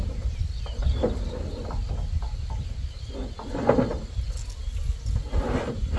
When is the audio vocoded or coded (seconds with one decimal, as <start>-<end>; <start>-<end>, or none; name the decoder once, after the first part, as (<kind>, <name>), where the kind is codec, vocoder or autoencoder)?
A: none